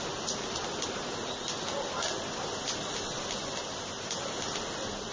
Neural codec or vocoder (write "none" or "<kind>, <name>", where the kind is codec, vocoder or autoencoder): none